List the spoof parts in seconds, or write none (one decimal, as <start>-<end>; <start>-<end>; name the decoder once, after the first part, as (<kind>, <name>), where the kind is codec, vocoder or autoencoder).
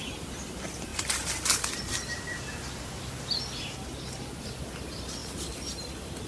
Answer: none